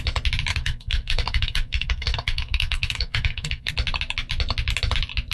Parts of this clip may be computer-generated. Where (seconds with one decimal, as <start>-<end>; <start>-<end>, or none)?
0.5-3.7